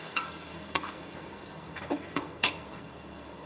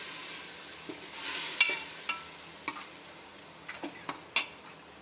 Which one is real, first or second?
second